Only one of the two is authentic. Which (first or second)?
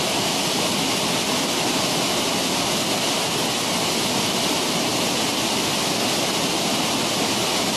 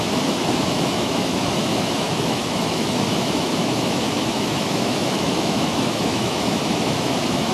first